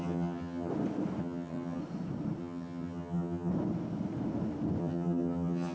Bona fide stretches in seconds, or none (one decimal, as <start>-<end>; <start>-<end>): 0.7-1.2; 1.8-2.4; 3.5-4.8